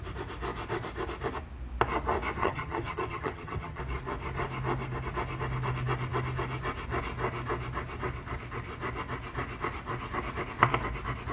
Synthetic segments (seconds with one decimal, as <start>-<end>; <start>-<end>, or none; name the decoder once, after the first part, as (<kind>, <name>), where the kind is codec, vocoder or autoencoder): 2.4-3.8 (vocoder, HiFi-GAN)